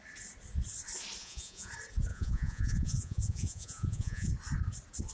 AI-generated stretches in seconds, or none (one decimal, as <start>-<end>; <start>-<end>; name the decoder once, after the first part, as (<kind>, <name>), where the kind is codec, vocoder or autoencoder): 1.2-1.7 (vocoder, Vocos); 2.1-4.3

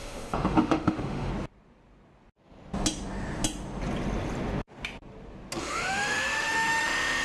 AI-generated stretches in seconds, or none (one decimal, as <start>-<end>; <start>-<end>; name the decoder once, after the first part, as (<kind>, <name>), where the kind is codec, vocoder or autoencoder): 0.0-1.3 (autoencoder, DAC-VAE); 5.6-7.2

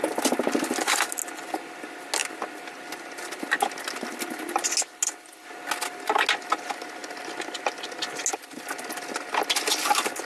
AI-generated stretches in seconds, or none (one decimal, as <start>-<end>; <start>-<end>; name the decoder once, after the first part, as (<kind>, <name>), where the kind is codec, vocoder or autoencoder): none

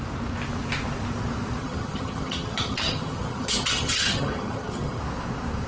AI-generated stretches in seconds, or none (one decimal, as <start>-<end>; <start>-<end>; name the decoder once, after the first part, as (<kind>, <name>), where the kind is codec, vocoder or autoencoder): 1.6-5.0 (vocoder, HiFi-GAN)

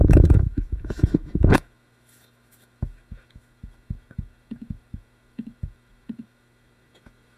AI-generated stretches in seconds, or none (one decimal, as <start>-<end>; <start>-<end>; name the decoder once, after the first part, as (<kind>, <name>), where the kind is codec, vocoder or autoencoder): 0.0-7.4 (autoencoder, DAC-VAE)

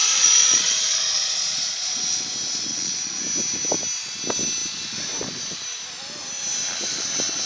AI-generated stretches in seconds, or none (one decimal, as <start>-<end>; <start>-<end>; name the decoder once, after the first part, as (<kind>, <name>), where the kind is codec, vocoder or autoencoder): 0.0-2.0 (vocoder, Vocos); 2.7-3.2

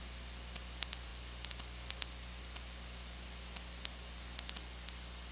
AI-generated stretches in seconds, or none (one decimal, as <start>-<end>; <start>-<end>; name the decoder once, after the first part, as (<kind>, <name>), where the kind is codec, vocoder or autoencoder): none